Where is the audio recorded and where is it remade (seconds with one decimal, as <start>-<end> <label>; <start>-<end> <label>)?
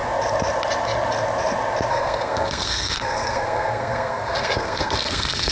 0.0-1.9 recorded; 1.9-5.5 remade